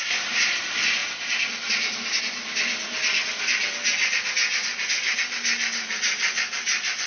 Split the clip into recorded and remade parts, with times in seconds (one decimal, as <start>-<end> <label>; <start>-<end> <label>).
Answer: 0.0-7.1 recorded